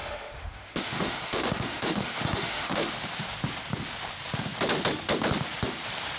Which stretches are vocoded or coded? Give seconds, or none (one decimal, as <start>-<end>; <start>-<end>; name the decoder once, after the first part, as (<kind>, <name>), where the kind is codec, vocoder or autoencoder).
0.0-2.9 (autoencoder, DAC-VAE)